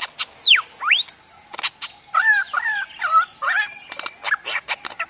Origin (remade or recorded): recorded